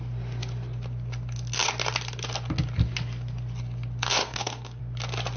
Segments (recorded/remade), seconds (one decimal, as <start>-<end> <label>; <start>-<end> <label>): 0.0-4.2 recorded; 4.2-4.8 remade; 4.8-5.4 recorded